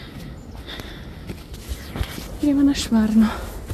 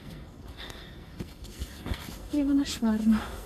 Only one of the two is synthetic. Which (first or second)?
second